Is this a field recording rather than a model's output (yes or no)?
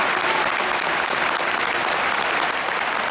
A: no